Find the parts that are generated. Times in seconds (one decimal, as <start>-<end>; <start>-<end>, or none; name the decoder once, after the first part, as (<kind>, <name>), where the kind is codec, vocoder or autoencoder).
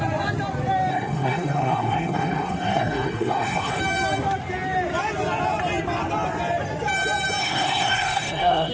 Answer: 0.9-3.8 (codec, SNAC); 7.4-8.7